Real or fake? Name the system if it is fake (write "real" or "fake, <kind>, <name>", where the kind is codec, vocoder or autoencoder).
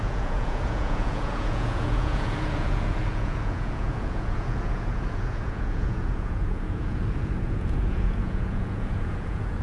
fake, vocoder, Vocos